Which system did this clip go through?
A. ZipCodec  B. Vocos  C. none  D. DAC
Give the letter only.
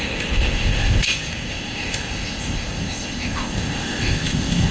A